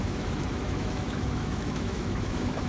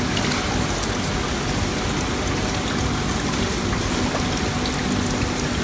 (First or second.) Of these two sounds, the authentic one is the second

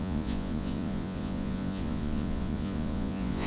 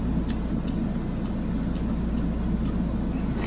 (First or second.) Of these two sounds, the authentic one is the second